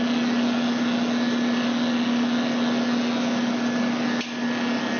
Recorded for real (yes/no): yes